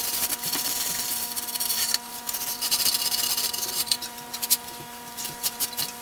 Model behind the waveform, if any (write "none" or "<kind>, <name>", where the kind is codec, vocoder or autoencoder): vocoder, BigVGAN v2